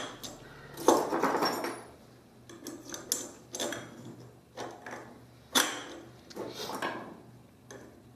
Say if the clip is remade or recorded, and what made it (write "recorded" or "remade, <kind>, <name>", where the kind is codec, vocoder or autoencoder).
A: recorded